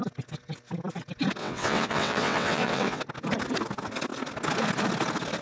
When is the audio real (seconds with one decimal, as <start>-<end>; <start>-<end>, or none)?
0.0-1.4; 3.0-5.4